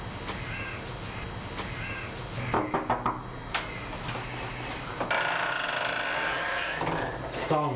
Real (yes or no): yes